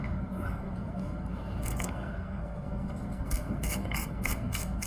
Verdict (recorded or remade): remade